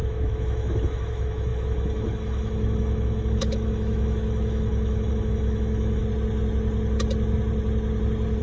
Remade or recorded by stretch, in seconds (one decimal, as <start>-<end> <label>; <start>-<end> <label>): 0.0-6.0 remade; 6.0-8.4 recorded